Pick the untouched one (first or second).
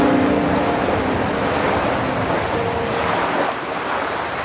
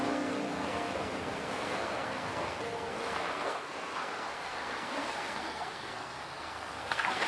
first